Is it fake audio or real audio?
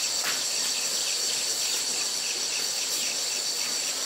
real